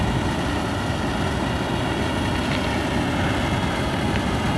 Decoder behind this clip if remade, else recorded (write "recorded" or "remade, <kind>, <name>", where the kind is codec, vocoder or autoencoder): recorded